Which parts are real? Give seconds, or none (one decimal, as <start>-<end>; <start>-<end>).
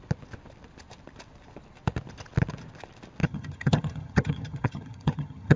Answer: 0.0-3.2